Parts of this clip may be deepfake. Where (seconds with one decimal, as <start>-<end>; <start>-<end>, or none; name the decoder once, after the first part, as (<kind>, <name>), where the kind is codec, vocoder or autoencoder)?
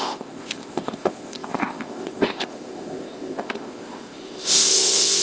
0.0-5.2 (codec, ZipCodec)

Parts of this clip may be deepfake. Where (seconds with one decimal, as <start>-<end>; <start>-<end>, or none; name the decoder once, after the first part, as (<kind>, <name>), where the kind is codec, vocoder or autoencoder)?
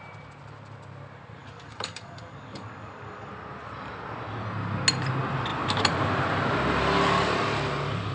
1.4-3.3 (codec, DAC)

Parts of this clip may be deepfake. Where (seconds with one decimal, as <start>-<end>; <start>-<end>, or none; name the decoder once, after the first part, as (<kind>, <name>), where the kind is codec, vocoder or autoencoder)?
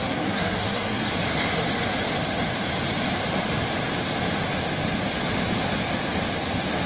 0.0-1.1 (codec, SNAC)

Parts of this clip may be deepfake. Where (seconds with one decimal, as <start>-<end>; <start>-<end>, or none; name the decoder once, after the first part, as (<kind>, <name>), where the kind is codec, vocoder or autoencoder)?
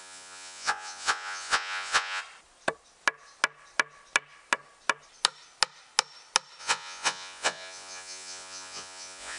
0.0-2.2 (vocoder, Vocos); 6.6-9.4